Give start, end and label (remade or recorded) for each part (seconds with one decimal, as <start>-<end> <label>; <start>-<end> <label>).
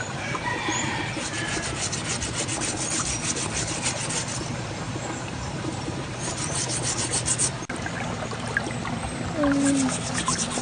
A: 0.0-4.5 recorded; 4.5-7.1 remade; 7.1-10.6 recorded